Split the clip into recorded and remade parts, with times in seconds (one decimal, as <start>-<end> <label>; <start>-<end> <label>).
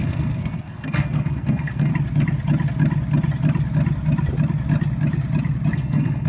0.0-1.9 remade; 1.9-5.7 recorded; 5.7-6.3 remade